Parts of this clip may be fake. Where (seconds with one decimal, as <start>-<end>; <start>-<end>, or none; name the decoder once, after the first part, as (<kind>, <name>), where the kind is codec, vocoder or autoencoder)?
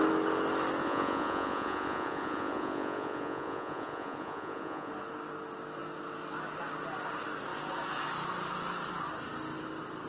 0.8-4.9 (vocoder, Vocos)